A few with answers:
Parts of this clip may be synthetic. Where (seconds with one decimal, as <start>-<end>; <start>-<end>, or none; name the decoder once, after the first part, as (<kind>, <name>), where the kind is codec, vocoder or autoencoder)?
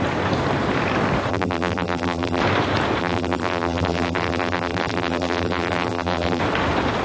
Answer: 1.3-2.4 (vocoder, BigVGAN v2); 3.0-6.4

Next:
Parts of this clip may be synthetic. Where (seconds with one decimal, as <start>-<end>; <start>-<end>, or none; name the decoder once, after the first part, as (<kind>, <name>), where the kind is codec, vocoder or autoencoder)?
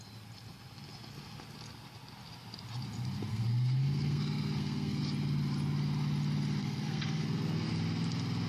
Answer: 3.3-5.0 (codec, SNAC); 6.6-7.7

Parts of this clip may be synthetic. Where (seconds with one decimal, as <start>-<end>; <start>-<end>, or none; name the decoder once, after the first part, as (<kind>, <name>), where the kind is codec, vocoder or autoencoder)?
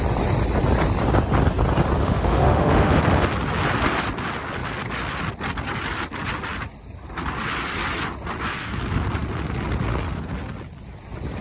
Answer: 2.0-3.0 (autoencoder, DAC-VAE)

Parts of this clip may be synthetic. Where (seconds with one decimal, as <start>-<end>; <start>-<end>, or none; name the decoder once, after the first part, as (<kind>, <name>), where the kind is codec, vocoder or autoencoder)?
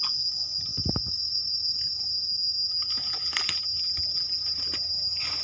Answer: none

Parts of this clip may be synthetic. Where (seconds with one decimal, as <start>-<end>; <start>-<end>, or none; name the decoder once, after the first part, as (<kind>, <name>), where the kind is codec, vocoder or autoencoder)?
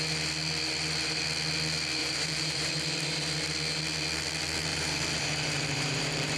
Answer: 2.0-2.7 (vocoder, BigVGAN v2); 4.7-6.4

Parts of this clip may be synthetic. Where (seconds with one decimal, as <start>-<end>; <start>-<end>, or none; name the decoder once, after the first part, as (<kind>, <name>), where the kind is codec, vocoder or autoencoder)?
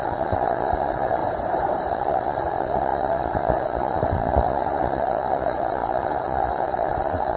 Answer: 0.0-1.2 (vocoder, WaveNeXt); 1.9-7.4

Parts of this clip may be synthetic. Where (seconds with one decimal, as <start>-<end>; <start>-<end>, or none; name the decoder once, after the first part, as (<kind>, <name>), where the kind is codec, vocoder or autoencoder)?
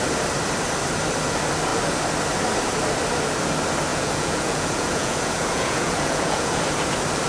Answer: 3.9-6.6 (vocoder, Vocos)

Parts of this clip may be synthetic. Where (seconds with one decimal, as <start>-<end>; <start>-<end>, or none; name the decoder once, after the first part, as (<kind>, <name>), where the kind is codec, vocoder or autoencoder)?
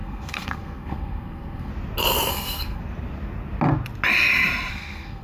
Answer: 0.0-1.7 (codec, SNAC); 2.3-2.8; 4.7-5.2